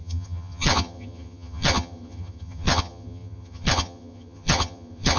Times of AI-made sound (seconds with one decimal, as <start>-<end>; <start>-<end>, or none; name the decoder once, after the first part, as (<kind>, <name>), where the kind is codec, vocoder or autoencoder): 0.0-5.2 (vocoder, HiFi-GAN)